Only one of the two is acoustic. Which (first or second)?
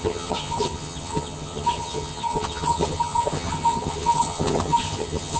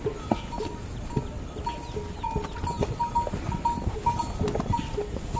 second